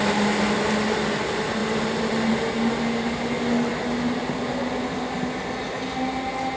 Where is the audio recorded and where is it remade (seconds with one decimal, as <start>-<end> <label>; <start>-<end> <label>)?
0.0-6.6 recorded